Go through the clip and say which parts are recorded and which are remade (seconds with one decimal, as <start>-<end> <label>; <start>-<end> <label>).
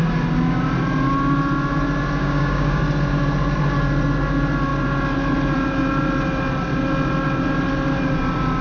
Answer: 0.0-2.2 recorded; 2.2-2.8 remade; 2.8-8.6 recorded